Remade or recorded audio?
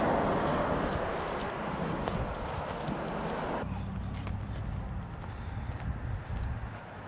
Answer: recorded